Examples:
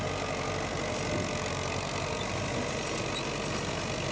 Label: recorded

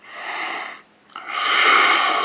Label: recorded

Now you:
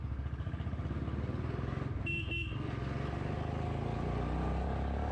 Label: recorded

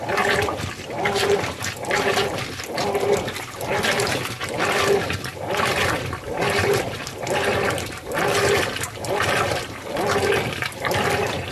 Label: remade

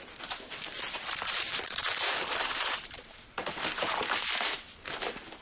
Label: remade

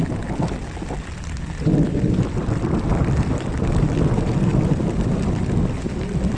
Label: recorded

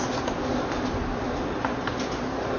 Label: recorded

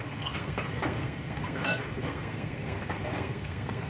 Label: remade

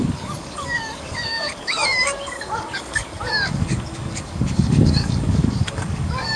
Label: remade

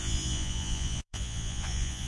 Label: remade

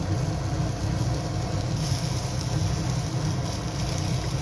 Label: recorded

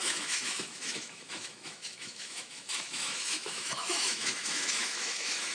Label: remade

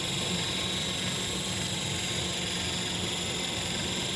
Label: recorded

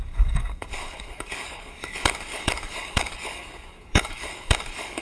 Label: remade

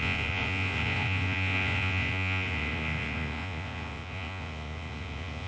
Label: remade